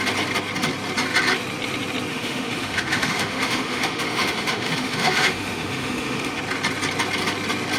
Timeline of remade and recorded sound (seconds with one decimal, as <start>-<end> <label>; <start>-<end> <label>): 0.0-2.1 recorded; 2.1-6.4 remade; 6.4-7.8 recorded